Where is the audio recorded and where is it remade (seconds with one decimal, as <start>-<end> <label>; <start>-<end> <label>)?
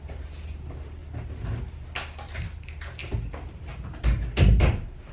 0.0-1.0 recorded; 1.0-1.6 remade; 1.6-3.0 recorded; 3.0-3.6 remade; 3.6-5.1 recorded